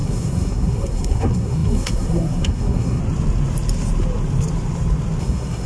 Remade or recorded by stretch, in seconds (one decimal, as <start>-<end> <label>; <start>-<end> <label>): 0.0-3.0 remade; 3.0-5.2 recorded; 5.2-5.7 remade